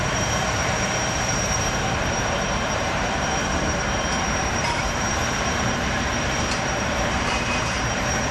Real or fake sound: fake